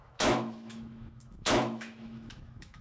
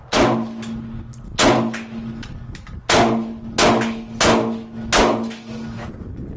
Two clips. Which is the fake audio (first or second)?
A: first